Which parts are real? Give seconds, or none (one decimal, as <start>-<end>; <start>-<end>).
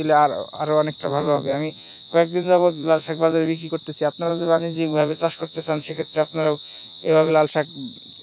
0.0-1.0; 3.7-4.3; 7.3-8.2